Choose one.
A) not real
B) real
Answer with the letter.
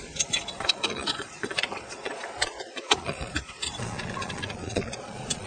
A